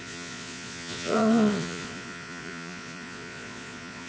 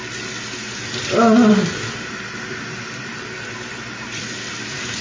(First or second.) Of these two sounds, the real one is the second